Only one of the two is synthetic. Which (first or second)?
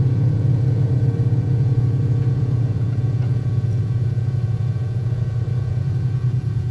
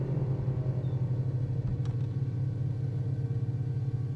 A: first